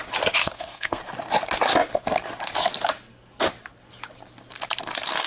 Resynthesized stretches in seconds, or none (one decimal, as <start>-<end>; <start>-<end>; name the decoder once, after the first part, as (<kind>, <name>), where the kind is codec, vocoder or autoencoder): 0.4-1.0 (codec, SNAC)